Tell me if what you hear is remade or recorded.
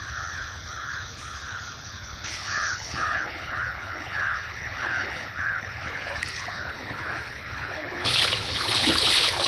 remade